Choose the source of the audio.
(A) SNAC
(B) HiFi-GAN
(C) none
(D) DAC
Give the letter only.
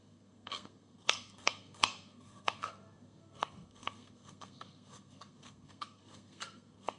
A